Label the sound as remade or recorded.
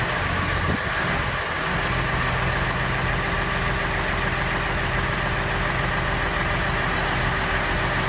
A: recorded